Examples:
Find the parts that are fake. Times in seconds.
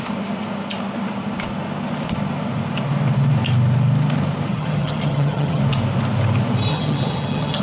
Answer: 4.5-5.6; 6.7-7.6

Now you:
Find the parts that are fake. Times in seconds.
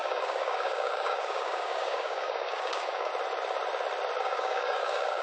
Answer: 0.0-3.1; 4.2-5.2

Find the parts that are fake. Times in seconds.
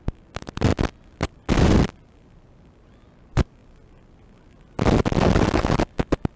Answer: none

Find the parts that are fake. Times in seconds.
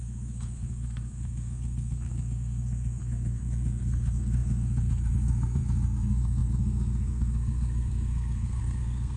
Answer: 0.0-9.2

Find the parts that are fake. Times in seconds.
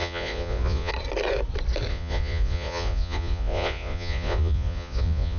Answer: 0.0-0.9; 1.9-5.4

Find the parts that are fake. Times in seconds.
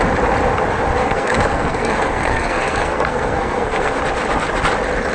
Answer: 1.0-4.0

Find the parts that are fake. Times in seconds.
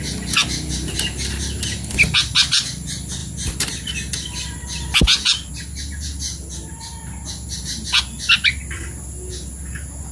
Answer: none